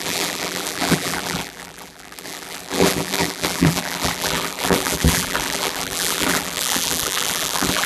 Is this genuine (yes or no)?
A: no